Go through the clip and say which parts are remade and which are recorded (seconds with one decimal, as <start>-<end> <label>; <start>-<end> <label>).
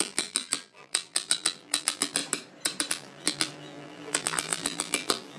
0.0-2.2 remade; 2.2-2.9 recorded; 2.9-5.4 remade